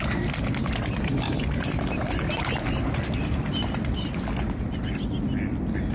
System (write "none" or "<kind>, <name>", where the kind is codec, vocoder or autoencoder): none